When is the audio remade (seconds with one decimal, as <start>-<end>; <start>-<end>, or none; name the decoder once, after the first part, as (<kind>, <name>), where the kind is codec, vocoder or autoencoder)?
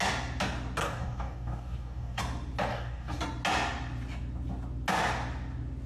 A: 0.8-2.2 (codec, DAC); 2.7-3.2